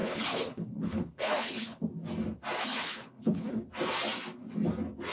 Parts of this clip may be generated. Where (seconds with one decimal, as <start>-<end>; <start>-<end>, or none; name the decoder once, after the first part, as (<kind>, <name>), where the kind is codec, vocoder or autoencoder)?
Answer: 0.0-1.8 (codec, HILCodec); 2.6-3.7